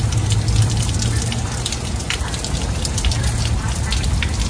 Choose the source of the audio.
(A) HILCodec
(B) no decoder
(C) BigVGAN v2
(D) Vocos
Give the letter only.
B